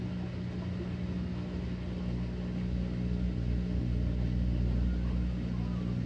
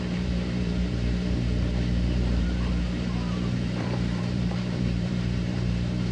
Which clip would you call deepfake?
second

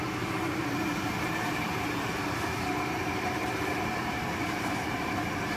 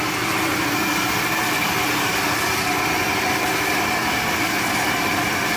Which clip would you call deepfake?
first